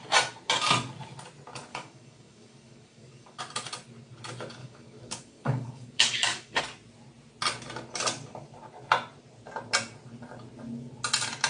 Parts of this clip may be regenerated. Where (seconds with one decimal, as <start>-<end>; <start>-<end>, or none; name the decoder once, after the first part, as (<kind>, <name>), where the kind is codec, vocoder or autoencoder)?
1.7-3.4 (codec, DAC); 4.6-6.6